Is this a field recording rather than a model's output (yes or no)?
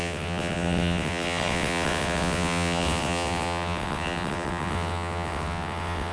no